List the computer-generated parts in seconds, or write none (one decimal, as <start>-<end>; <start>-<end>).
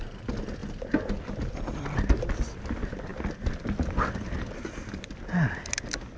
none